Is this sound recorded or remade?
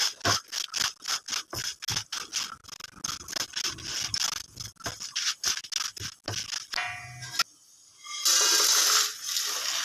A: recorded